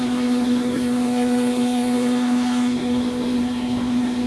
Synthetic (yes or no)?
yes